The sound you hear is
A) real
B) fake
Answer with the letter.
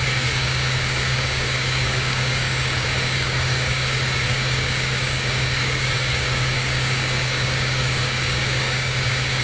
B